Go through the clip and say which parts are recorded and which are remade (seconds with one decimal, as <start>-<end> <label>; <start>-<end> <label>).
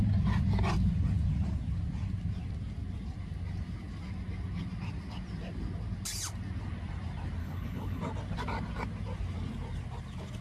0.0-7.4 recorded; 7.4-8.0 remade; 8.0-10.4 recorded